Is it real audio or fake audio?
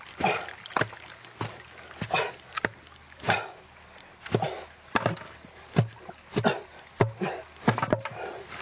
real